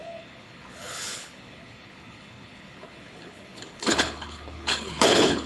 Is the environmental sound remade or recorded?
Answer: remade